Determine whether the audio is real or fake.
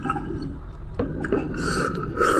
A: real